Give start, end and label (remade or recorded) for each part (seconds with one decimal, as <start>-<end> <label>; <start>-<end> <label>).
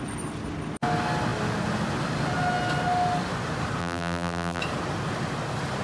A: 0.0-3.8 recorded; 3.8-4.6 remade; 4.6-5.8 recorded